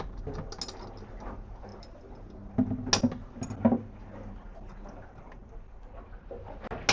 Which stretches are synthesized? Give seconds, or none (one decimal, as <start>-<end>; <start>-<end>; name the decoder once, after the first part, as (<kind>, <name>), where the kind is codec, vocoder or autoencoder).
none